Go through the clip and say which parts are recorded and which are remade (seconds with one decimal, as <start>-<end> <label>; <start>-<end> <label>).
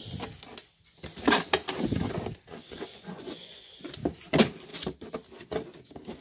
0.0-2.5 recorded; 2.5-3.9 remade; 3.9-6.2 recorded